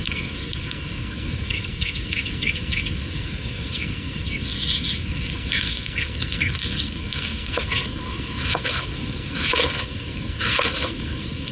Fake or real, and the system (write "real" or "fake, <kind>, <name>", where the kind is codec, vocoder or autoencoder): fake, codec, SNAC